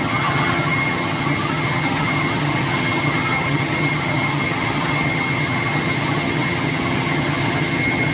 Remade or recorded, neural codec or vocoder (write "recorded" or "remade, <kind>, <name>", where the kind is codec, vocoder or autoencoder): remade, vocoder, HiFi-GAN